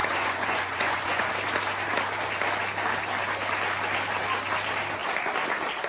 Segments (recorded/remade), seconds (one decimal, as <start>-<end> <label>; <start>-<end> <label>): 0.0-1.3 remade; 1.3-5.9 recorded